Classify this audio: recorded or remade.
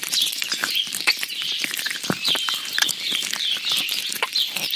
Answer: remade